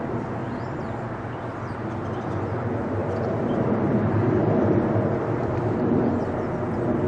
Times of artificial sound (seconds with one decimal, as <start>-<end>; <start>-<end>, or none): 0.4-1.2; 3.0-6.1